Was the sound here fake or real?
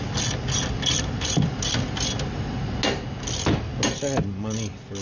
real